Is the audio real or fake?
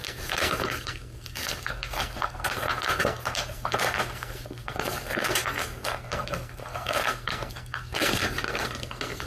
fake